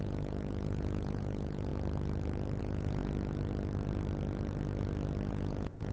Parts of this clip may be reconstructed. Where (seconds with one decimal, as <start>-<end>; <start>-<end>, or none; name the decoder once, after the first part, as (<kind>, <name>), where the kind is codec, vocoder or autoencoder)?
0.0-1.7 (vocoder, Vocos); 2.6-3.0; 5.3-5.9